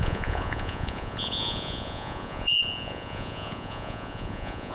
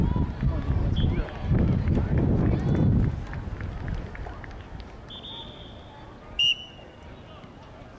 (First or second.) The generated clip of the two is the first